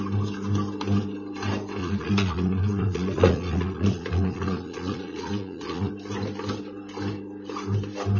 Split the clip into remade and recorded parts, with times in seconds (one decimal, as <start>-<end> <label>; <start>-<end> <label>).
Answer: 0.0-1.8 recorded; 1.8-5.9 remade; 5.9-8.2 recorded